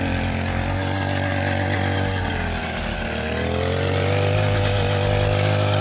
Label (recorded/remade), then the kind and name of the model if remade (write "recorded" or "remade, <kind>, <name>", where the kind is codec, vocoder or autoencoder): recorded